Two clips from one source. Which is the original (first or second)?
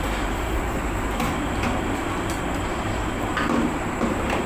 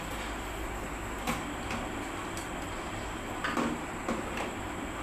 second